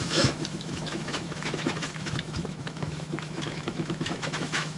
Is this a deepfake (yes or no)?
yes